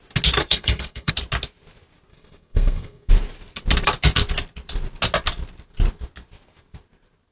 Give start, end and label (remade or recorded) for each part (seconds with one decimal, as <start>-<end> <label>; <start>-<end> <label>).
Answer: 0.0-0.4 recorded; 0.4-1.1 remade; 1.1-2.1 recorded; 2.1-3.1 remade; 3.1-7.3 recorded